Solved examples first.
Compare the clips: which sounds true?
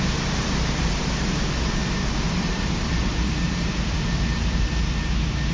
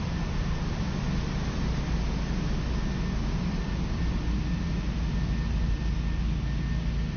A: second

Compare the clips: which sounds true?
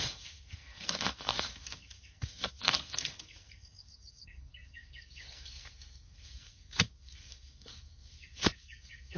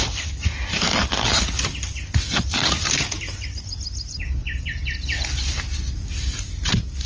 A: second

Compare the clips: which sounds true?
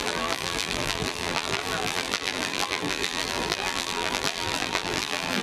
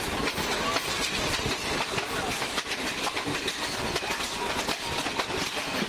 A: second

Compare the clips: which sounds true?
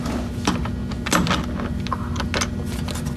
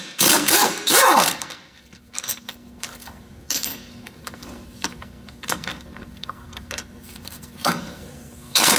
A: first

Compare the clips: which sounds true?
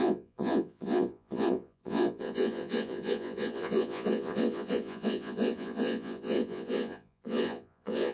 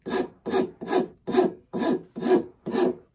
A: second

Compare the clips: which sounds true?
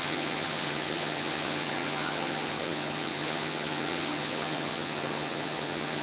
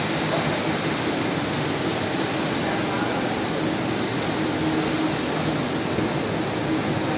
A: second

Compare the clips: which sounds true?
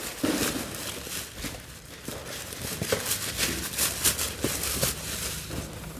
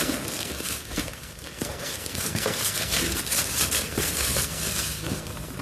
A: first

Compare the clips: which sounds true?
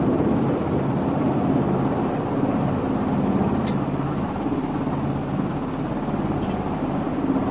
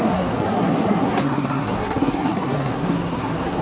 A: first